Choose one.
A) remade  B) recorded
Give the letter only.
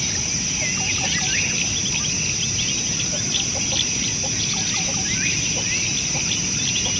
B